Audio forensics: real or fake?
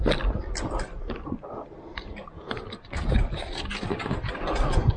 real